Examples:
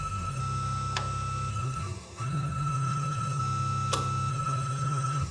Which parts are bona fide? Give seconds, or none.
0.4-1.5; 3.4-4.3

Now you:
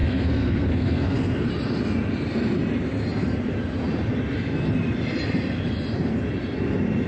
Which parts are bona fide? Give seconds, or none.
1.5-7.1

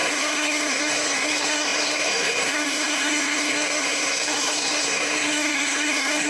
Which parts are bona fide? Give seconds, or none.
none

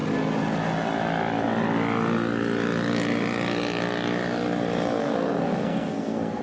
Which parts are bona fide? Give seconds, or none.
0.0-5.0

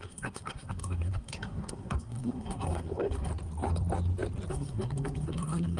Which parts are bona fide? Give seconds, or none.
3.3-4.5

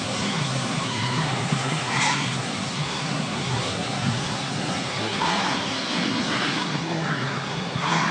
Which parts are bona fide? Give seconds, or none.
none

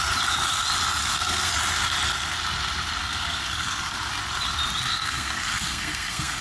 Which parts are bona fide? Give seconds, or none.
0.0-1.0; 1.5-3.0; 4.1-4.9

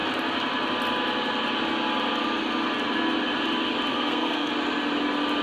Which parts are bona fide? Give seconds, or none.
0.0-3.9; 4.5-5.4